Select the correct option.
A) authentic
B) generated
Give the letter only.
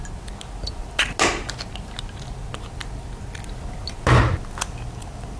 A